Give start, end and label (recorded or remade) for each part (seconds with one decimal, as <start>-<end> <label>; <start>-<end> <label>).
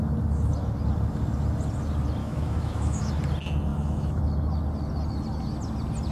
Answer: 0.0-2.2 recorded; 2.2-3.1 remade; 3.1-3.7 recorded; 3.7-4.2 remade; 4.2-6.1 recorded